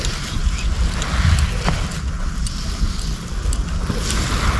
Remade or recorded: recorded